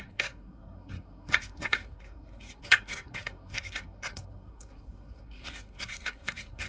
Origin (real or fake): fake